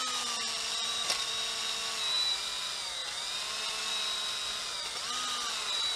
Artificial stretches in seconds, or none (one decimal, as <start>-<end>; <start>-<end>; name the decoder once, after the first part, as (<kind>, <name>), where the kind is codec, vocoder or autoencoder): none